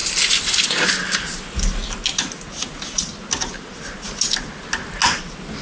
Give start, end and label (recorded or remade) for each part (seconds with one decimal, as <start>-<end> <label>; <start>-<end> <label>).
0.0-5.6 recorded